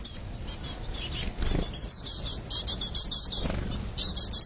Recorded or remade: recorded